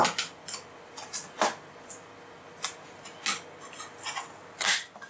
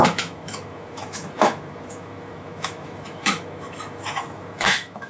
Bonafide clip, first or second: first